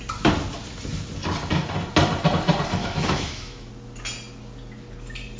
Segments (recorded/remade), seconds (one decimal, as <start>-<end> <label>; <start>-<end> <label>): 0.0-2.8 recorded; 2.8-3.7 remade; 3.7-5.4 recorded